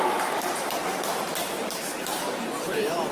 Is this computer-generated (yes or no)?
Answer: yes